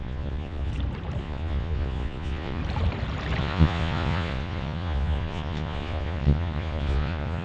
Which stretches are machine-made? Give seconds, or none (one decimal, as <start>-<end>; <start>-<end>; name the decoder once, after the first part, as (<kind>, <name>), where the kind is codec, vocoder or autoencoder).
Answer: 0.0-0.7 (vocoder, Vocos); 1.2-2.6; 3.4-7.4